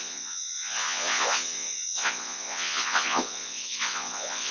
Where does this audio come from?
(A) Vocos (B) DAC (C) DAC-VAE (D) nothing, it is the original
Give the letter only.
A